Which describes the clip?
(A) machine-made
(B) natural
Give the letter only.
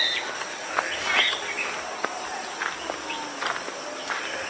B